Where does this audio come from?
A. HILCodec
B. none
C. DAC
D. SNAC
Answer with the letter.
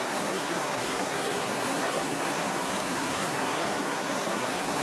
D